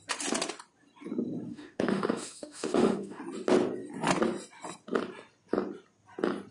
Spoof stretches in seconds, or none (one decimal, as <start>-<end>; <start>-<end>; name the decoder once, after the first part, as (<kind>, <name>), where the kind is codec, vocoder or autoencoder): 1.5-3.2 (autoencoder, DAC-VAE)

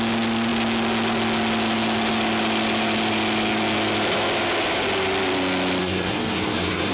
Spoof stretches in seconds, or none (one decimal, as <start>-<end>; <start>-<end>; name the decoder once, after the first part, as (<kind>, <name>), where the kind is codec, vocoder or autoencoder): 5.8-6.9 (codec, SNAC)